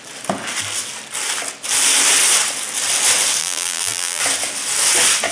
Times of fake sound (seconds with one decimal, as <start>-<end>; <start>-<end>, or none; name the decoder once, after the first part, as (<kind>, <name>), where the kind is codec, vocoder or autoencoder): 3.4-4.2 (vocoder, BigVGAN v2)